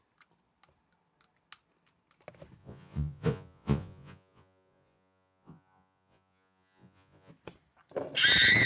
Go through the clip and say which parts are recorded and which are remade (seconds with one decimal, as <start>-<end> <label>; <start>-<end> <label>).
0.0-2.6 recorded; 2.6-7.3 remade; 7.3-8.7 recorded